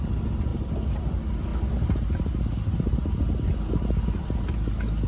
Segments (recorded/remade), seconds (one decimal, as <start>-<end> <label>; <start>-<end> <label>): 0.0-5.1 recorded